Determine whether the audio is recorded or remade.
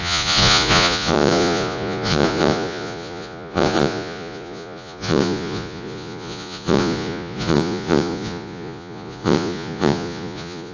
remade